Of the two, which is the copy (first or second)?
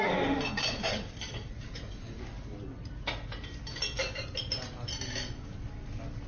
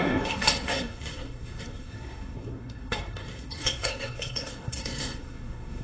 second